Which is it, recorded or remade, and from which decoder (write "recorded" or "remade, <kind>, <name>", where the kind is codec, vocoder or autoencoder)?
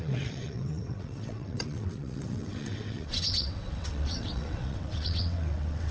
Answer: remade, vocoder, WaveNeXt